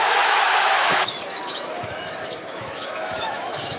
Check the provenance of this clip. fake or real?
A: fake